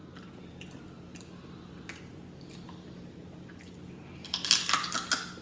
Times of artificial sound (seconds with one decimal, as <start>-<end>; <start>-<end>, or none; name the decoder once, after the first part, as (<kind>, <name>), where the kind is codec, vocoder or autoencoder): none